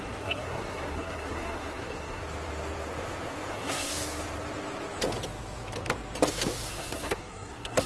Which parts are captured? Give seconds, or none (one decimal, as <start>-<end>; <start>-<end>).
2.2-3.5; 3.9-6.7